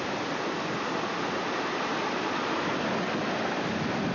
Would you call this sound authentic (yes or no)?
yes